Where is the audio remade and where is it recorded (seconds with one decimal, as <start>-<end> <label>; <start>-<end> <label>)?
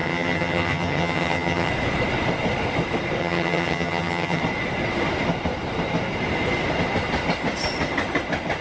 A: 0.0-1.7 remade; 1.7-3.2 recorded; 3.2-4.4 remade; 4.4-8.6 recorded